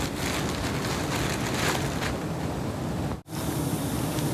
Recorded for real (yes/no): yes